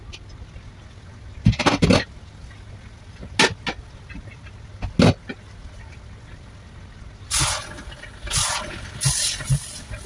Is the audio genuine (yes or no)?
yes